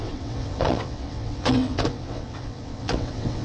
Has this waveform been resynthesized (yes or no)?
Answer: yes